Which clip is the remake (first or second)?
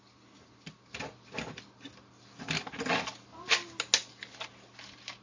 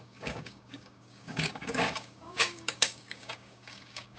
second